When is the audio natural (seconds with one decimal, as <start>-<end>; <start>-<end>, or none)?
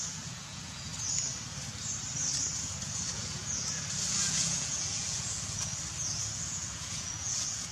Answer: 0.9-2.6; 5.7-6.4